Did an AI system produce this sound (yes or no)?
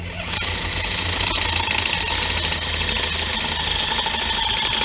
no